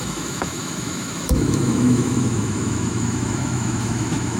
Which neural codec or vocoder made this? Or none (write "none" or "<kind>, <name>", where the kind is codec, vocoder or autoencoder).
autoencoder, DAC-VAE